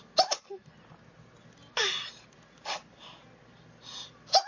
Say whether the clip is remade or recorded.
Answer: recorded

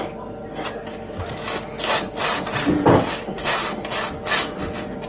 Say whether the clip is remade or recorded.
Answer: recorded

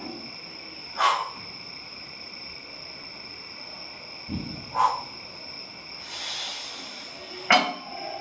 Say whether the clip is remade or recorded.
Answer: recorded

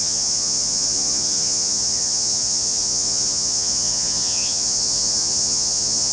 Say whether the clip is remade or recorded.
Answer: remade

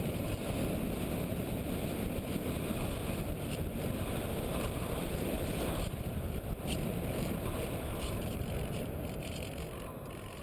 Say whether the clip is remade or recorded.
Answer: remade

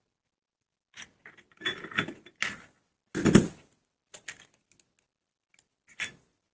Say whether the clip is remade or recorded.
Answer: recorded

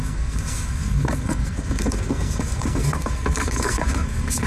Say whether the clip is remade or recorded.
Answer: remade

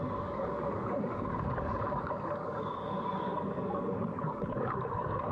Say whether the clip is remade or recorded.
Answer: remade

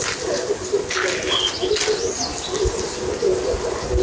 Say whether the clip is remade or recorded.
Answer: recorded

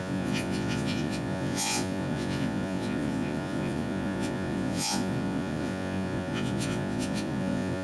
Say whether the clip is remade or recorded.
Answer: remade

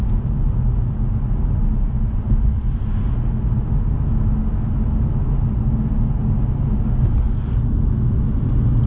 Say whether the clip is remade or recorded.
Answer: recorded